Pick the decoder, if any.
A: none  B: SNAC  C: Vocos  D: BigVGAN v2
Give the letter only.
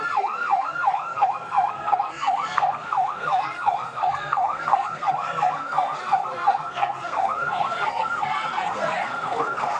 B